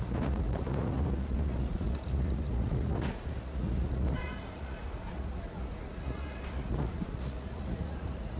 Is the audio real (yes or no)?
no